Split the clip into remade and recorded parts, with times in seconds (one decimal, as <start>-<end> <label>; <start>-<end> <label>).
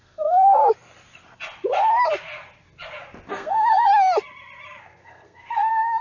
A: 0.0-0.6 remade; 0.6-3.3 recorded; 3.3-3.9 remade; 3.9-4.8 recorded; 4.8-6.0 remade